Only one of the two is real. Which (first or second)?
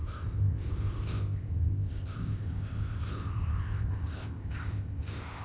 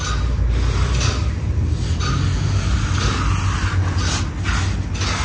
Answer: second